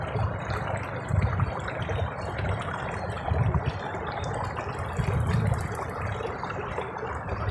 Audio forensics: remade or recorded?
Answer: remade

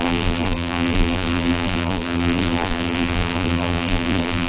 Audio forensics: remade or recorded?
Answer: remade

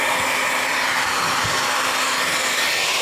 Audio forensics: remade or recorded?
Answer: recorded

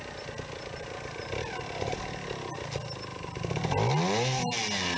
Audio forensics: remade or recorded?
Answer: recorded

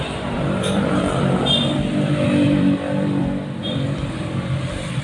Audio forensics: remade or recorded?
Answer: remade